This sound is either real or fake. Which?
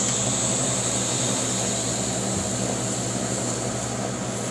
real